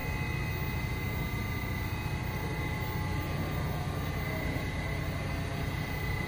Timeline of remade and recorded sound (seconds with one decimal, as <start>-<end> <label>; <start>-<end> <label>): 0.0-6.3 recorded

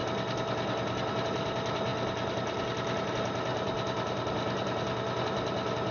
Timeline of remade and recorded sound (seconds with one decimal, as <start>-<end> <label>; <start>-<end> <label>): 0.0-5.9 recorded

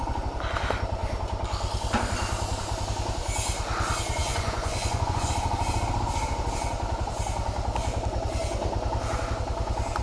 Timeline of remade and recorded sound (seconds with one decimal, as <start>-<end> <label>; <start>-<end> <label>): 0.0-4.2 recorded; 4.2-5.3 remade; 5.3-10.0 recorded

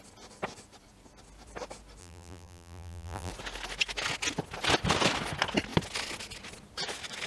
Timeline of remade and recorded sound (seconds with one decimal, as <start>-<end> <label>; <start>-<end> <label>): 0.0-2.0 recorded; 2.0-3.3 remade; 3.3-7.3 recorded